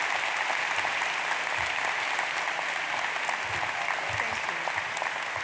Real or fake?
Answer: real